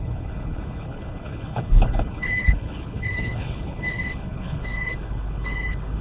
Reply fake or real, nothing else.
fake